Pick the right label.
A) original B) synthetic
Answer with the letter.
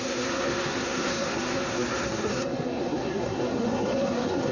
B